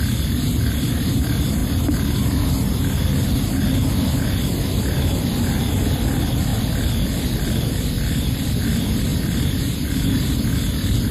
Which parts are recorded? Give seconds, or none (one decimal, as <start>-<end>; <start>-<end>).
0.0-6.5; 8.6-9.1; 9.9-11.1